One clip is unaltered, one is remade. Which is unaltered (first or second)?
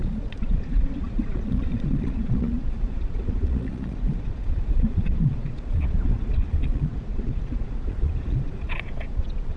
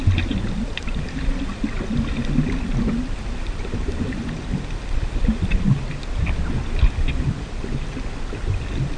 second